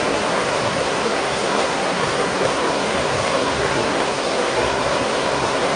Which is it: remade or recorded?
remade